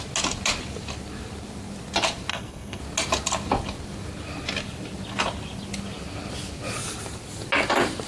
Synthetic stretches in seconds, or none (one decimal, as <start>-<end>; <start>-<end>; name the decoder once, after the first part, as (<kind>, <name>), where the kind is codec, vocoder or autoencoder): 2.3-2.8 (codec, SNAC)